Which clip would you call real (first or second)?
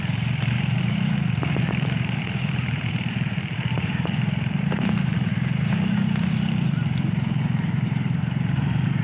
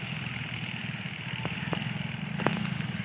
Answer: second